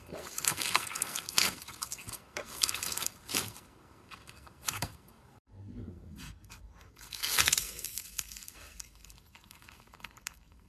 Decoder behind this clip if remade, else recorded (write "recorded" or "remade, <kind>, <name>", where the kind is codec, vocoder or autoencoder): remade, codec, SNAC